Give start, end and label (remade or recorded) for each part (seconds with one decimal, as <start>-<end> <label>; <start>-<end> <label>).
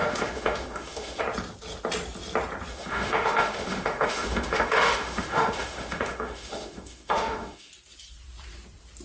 0.0-1.2 remade; 1.2-2.7 recorded; 2.7-7.7 remade; 7.7-9.0 recorded